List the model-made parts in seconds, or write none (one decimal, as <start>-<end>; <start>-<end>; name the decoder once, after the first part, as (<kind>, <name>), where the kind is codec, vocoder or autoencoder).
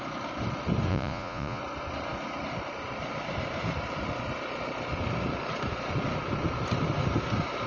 0.9-1.6 (vocoder, Vocos)